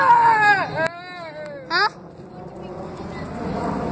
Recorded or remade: recorded